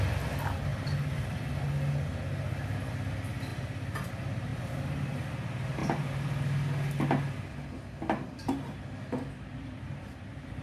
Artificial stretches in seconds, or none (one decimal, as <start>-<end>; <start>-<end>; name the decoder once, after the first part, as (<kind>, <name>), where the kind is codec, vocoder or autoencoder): 0.7-1.5 (vocoder, BigVGAN v2); 3.5-4.1; 4.5-5.3